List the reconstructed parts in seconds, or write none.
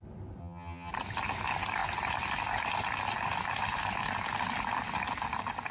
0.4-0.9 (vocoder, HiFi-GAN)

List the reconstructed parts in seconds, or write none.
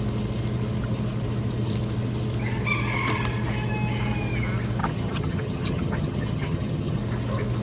4.8-7.0 (vocoder, HiFi-GAN)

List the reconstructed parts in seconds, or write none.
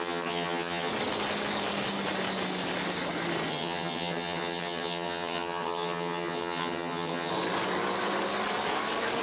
0.0-0.9 (vocoder, HiFi-GAN); 3.5-7.3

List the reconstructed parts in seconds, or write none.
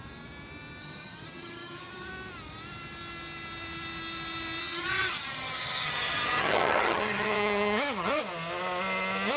0.8-2.1 (vocoder, HiFi-GAN); 4.6-8.2